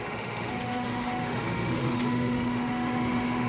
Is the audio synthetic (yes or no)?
yes